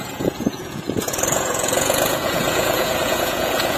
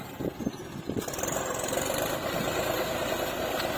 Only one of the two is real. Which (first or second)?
second